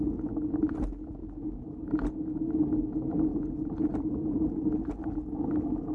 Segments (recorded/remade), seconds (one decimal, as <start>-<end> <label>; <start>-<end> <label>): 0.0-1.2 recorded; 1.2-2.1 remade; 2.1-3.3 recorded; 3.3-5.0 remade; 5.0-5.9 recorded